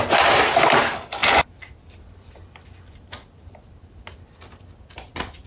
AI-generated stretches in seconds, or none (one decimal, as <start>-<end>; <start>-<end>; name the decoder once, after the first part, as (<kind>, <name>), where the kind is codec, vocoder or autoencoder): none